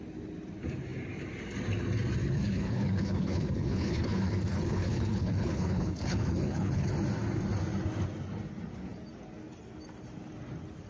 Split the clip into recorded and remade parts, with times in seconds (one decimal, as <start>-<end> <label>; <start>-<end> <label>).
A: 0.0-2.2 recorded; 2.2-6.9 remade; 6.9-10.9 recorded